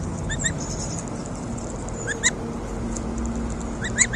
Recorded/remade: recorded